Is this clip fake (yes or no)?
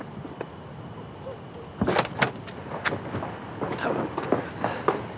no